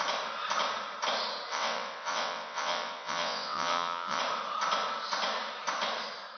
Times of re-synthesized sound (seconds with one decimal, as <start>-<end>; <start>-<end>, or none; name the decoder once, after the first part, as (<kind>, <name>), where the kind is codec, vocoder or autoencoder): 1.5-4.2 (vocoder, WaveNeXt)